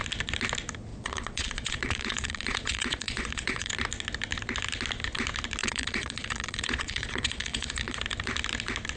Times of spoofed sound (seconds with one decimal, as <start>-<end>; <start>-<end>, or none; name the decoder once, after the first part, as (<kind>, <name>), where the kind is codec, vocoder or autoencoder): 0.9-3.7 (vocoder, Vocos); 5.6-8.0